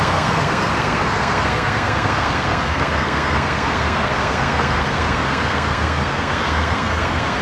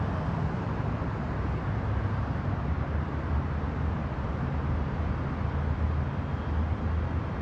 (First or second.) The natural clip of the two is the second